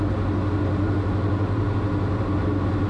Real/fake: real